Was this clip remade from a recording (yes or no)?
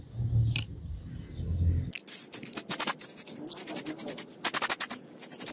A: no